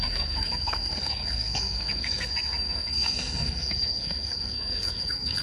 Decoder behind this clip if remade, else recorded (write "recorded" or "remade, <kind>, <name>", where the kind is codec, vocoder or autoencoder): remade, codec, SNAC